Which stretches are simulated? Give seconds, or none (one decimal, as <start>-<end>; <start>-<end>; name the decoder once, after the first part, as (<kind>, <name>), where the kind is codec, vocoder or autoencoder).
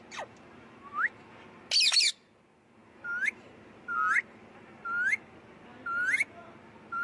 none